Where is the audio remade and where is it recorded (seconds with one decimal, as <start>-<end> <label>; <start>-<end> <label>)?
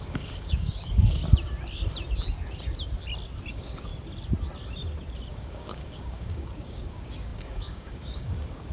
0.0-1.2 remade; 1.2-3.5 recorded; 3.5-3.9 remade; 3.9-5.3 recorded; 5.3-8.7 remade